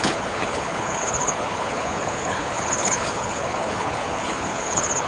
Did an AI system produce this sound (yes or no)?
yes